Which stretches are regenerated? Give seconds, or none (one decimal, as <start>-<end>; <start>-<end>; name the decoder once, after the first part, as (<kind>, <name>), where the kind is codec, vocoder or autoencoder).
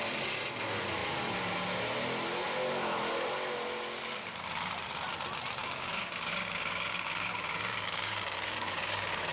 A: 5.6-9.3 (codec, DAC)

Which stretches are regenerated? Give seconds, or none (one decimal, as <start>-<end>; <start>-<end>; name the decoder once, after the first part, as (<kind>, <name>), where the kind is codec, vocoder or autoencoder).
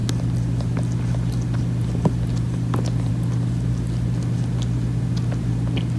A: none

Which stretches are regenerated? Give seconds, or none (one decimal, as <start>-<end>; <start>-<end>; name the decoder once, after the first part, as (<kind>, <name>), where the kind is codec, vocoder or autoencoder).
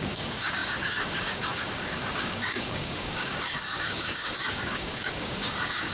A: 0.0-5.9 (codec, DAC)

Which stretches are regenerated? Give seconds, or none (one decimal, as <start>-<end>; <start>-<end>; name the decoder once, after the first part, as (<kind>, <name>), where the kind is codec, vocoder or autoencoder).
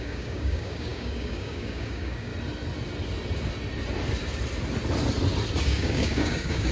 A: 0.0-2.3 (codec, DAC); 5.6-6.7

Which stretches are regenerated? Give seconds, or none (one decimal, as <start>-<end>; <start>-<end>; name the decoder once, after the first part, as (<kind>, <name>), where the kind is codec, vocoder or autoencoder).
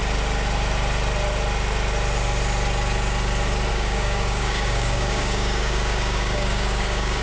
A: 3.7-7.2 (codec, DAC)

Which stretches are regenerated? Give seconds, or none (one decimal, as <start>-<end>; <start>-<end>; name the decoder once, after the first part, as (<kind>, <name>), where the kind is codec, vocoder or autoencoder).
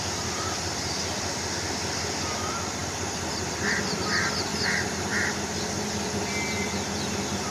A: none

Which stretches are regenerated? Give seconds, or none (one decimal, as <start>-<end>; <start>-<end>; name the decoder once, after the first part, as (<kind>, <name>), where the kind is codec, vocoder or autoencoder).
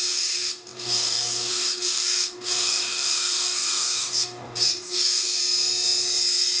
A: 0.0-5.4 (codec, DAC)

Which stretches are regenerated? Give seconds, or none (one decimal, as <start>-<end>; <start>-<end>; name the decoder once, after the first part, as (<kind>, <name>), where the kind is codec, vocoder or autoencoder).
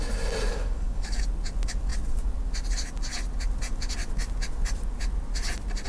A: 0.5-1.2 (codec, DAC)